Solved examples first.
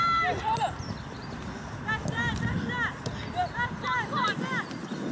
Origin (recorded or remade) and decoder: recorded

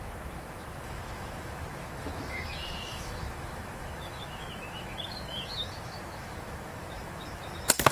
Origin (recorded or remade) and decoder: remade, autoencoder, DAC-VAE